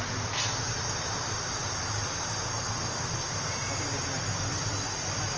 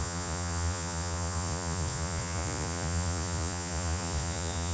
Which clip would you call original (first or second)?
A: first